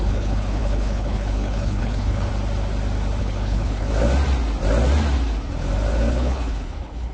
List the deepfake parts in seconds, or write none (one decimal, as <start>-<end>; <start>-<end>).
0.0-2.3; 3.2-3.9; 6.1-7.1